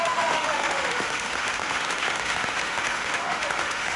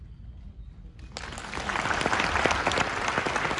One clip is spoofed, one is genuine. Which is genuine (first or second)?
second